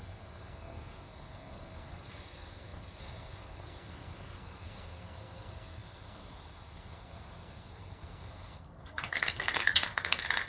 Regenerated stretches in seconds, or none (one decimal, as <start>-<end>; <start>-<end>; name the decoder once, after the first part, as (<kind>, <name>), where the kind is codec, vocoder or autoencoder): 0.0-10.5 (codec, SNAC)